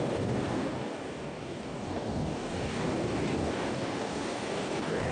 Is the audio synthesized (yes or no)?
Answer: yes